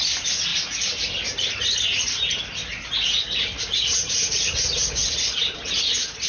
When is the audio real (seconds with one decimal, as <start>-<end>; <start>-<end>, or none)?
0.0-6.3